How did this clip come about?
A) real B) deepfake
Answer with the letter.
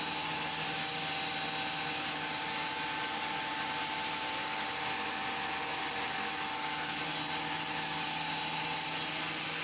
A